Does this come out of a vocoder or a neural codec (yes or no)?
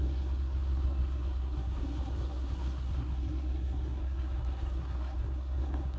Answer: yes